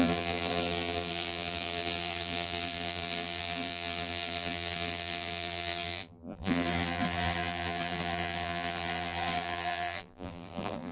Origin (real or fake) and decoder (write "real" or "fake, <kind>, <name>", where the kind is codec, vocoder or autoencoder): fake, vocoder, BigVGAN v2